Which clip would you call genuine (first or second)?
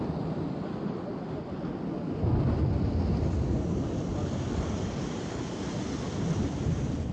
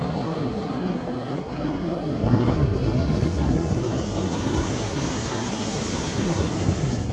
first